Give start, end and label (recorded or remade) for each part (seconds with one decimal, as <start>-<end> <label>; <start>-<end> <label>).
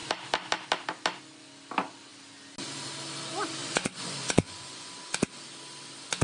0.0-3.6 recorded; 3.6-4.9 remade; 4.9-6.2 recorded